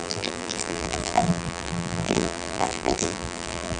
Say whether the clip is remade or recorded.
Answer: remade